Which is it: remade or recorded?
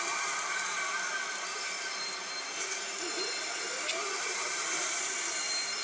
recorded